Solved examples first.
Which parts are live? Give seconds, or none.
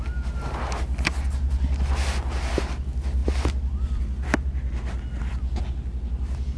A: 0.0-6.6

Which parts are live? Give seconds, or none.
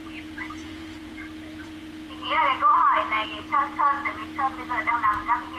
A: 1.1-1.6; 4.2-4.9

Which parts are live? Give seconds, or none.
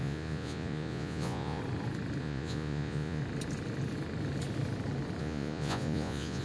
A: 1.6-2.2; 3.2-5.2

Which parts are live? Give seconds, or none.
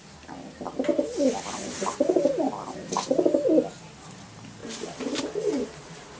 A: 0.0-6.2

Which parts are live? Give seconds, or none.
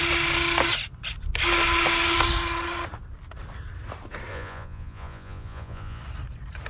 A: 0.0-4.3; 6.0-6.7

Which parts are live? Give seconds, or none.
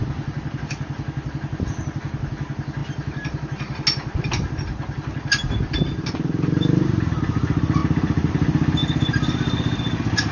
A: 0.0-10.3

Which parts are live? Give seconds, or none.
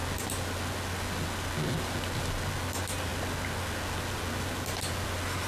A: 0.0-5.5